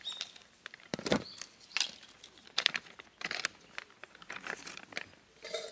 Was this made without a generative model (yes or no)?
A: no